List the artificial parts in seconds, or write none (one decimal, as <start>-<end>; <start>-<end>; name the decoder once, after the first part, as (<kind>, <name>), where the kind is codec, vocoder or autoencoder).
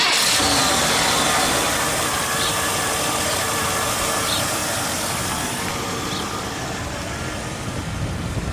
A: none